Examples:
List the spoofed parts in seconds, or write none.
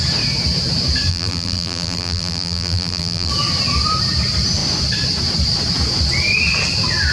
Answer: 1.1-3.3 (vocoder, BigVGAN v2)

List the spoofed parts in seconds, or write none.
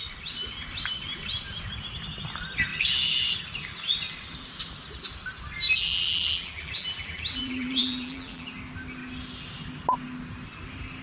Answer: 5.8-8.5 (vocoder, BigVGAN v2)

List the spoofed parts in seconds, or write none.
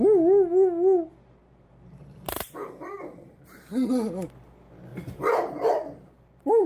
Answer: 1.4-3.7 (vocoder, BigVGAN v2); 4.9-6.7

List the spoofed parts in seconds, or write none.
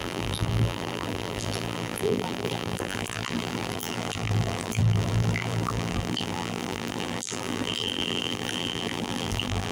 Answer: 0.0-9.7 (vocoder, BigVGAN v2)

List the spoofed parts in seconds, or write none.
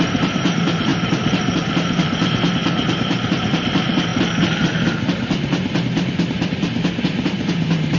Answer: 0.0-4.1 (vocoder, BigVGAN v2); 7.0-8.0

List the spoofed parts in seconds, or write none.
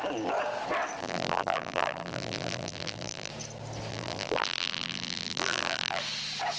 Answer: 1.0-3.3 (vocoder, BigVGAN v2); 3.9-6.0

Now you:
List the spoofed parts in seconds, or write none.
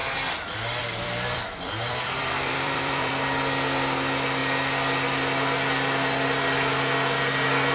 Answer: 0.0-3.1 (vocoder, BigVGAN v2)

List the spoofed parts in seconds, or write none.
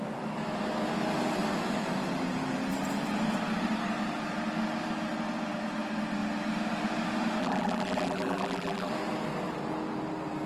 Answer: 7.4-8.9 (vocoder, BigVGAN v2)